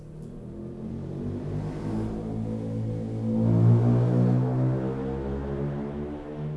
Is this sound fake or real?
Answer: real